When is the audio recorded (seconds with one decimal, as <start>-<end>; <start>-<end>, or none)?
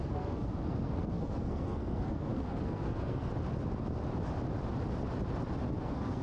3.3-5.8